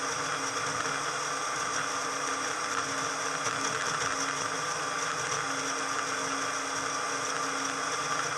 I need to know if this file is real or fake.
real